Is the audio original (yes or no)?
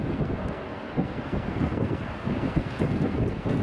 no